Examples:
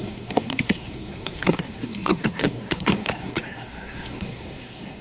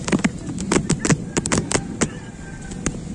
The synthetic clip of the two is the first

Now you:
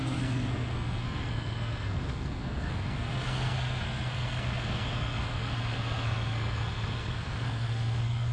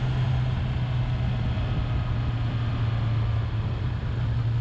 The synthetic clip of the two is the first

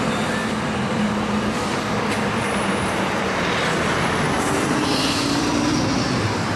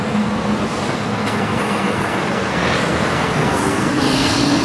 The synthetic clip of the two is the second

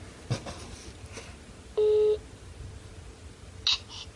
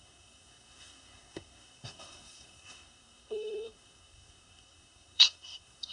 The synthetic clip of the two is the second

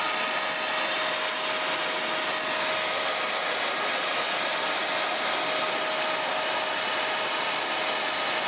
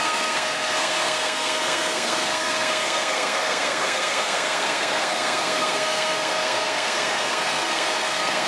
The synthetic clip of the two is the second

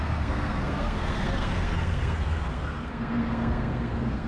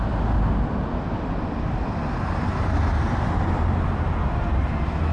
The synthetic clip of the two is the first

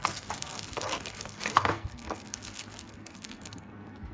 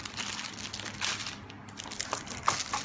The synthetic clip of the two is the first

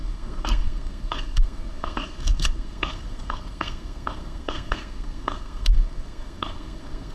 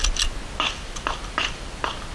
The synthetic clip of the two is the first